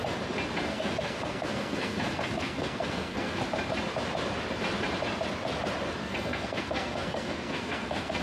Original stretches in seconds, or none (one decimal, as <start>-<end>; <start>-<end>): 0.0-0.7; 3.4-6.0